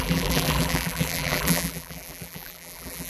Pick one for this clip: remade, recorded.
remade